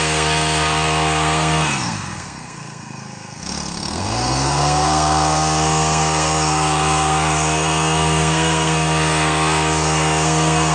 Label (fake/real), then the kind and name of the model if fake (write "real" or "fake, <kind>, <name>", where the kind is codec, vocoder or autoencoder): fake, codec, SNAC